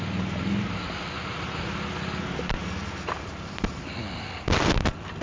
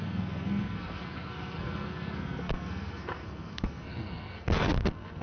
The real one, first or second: first